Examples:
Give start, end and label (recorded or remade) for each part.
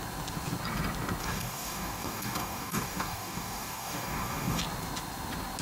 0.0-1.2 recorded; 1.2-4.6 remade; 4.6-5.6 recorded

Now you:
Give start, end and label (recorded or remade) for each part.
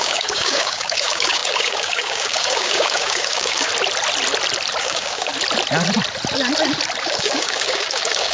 0.0-3.7 remade; 3.7-4.8 recorded; 4.8-5.3 remade; 5.3-7.0 recorded; 7.0-8.3 remade